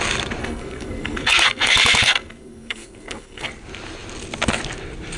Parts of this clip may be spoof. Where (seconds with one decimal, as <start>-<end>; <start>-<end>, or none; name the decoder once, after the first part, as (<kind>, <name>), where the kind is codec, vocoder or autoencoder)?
0.4-3.5 (codec, SNAC)